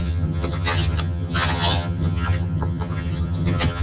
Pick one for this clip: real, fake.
fake